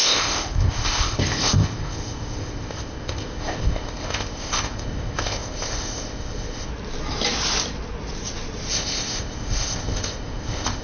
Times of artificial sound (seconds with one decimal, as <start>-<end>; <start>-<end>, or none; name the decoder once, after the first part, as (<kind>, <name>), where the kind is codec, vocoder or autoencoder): 0.0-6.7 (codec, ZipCodec); 8.7-10.8